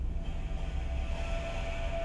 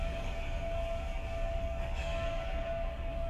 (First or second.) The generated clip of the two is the second